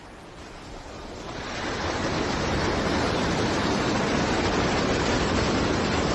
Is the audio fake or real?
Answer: real